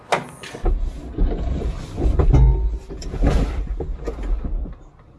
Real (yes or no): yes